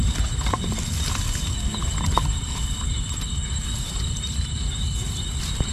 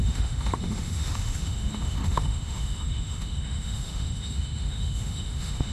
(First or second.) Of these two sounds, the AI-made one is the second